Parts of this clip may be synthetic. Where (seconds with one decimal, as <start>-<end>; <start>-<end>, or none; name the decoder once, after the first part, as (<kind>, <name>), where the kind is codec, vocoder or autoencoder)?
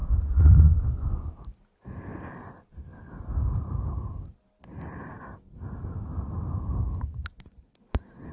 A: 0.0-1.3 (vocoder, Vocos)